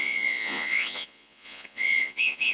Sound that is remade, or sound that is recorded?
remade